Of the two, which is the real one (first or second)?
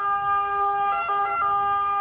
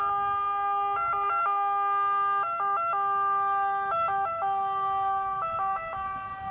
second